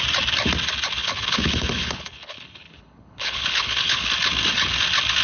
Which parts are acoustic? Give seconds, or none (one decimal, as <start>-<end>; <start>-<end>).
0.0-1.0; 4.1-5.2